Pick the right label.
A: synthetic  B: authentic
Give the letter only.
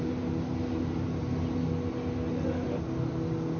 B